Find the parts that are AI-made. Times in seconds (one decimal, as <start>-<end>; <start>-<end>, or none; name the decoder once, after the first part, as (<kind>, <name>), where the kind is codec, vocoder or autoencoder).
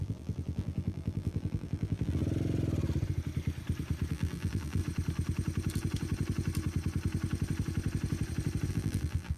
0.0-2.2 (vocoder, BigVGAN v2); 4.1-4.8; 8.7-9.4